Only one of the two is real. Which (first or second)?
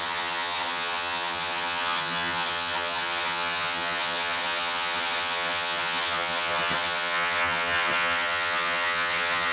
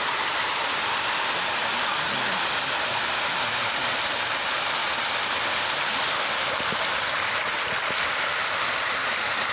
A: second